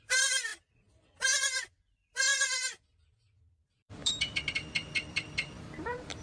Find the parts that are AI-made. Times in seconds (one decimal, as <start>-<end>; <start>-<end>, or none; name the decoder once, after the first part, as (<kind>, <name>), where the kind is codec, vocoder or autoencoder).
0.0-2.3 (vocoder, BigVGAN v2); 3.4-6.2